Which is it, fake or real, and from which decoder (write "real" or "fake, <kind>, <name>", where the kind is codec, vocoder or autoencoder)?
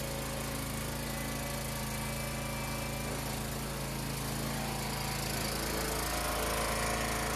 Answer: real